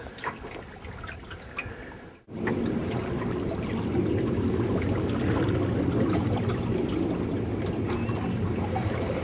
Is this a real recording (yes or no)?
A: yes